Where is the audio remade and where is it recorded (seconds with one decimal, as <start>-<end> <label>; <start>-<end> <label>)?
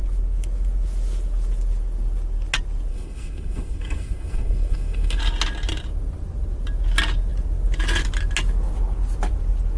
0.0-2.9 recorded; 2.9-5.2 remade; 5.2-9.8 recorded